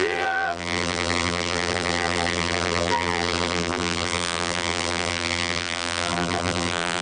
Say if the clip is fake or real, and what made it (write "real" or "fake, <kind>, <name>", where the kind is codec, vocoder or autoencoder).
fake, vocoder, BigVGAN v2